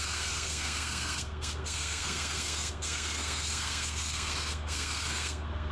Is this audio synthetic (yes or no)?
yes